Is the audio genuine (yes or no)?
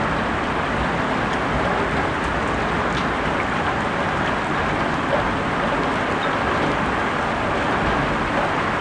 yes